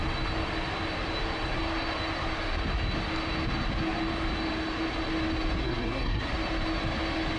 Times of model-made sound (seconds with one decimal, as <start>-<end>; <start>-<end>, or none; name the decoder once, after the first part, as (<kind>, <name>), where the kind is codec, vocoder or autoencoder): 5.6-6.3 (codec, SNAC)